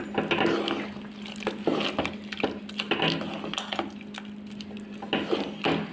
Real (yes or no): yes